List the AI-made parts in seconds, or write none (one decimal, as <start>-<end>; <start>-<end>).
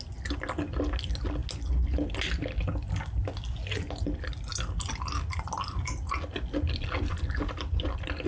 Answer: none